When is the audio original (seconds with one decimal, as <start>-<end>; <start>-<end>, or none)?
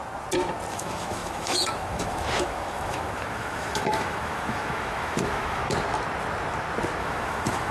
0.0-0.7; 5.6-7.0